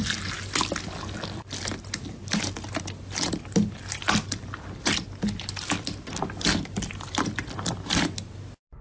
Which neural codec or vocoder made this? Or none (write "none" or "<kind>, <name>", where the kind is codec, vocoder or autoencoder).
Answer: none